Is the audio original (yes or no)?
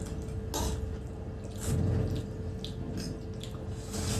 yes